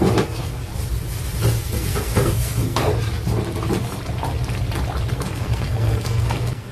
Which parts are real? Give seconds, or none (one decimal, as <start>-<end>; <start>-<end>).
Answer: 0.7-1.6; 2.9-5.1